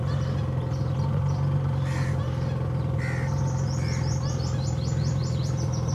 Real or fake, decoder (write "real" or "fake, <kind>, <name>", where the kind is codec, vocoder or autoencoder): real